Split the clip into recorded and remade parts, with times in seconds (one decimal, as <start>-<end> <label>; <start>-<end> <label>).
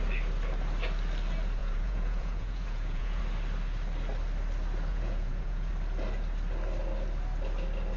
0.0-1.6 recorded; 1.6-3.2 remade; 3.2-4.9 recorded; 4.9-5.7 remade; 5.7-8.0 recorded